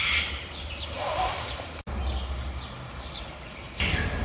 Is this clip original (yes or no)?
yes